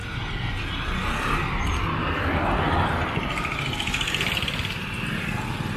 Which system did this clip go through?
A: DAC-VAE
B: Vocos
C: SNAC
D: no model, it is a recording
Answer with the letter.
D